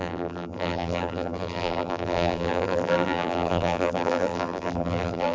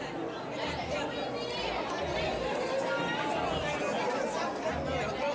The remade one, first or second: first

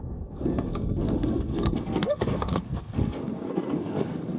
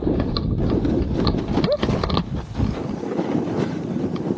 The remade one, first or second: first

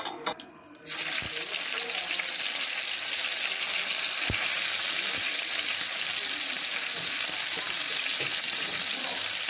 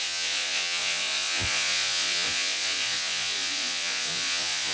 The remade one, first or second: second